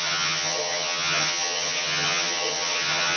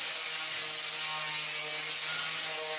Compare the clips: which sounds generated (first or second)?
first